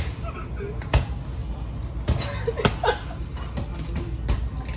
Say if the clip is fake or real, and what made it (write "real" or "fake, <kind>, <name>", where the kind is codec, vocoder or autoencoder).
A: real